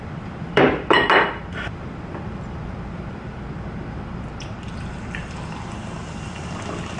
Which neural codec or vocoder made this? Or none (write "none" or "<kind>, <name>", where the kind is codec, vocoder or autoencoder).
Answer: vocoder, BigVGAN v2